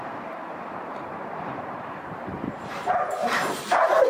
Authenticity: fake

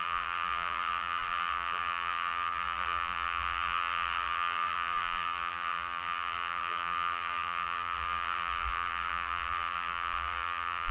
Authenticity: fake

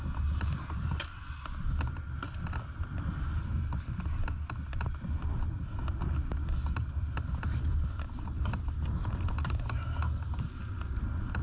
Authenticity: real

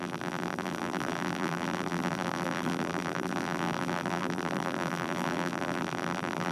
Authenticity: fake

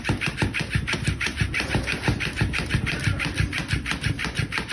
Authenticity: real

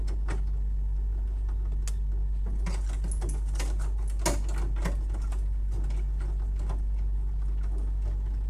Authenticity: real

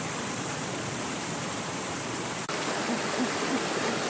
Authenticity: fake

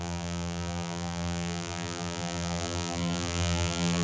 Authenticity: fake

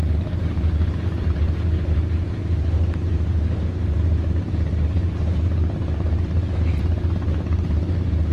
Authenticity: fake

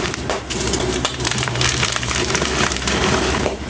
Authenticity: fake